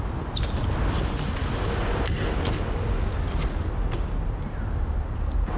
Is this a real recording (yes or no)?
yes